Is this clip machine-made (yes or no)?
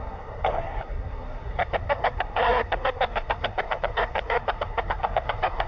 yes